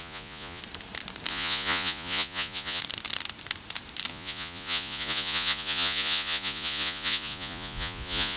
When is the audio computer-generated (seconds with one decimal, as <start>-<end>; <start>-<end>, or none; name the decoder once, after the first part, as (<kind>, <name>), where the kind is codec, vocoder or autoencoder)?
0.0-0.6 (vocoder, Vocos); 1.3-2.8; 4.1-8.4

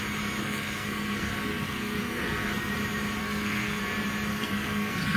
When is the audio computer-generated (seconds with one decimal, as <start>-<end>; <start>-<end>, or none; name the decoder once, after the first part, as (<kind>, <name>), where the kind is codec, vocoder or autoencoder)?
0.4-2.7 (codec, SNAC); 3.2-3.8; 4.3-5.2

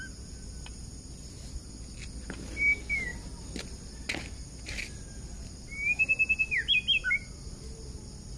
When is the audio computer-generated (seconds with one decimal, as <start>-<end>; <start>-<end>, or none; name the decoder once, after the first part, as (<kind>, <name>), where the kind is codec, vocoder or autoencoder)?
none

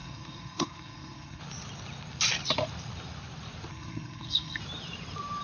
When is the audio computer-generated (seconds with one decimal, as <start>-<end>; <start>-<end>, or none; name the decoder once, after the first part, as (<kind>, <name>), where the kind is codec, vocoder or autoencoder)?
0.0-1.4 (codec, SNAC); 3.7-4.6

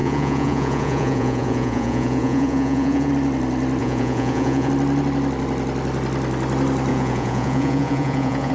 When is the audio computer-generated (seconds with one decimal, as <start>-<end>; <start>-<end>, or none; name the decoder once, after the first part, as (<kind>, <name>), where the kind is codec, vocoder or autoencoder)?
0.0-3.1 (vocoder, Vocos); 3.8-4.7; 6.9-8.5

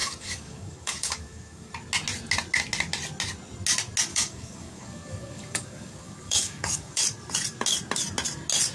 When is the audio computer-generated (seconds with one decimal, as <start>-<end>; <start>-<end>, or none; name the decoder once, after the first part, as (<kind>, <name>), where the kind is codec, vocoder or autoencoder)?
0.0-1.7 (codec, DAC); 4.1-7.0

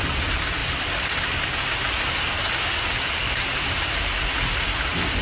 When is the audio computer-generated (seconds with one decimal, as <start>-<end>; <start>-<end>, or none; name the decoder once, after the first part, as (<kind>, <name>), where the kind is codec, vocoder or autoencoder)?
none

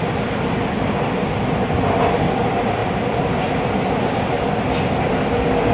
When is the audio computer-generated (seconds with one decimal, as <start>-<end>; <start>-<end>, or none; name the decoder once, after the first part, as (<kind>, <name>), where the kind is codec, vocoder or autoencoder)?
2.8-3.7 (vocoder, BigVGAN v2)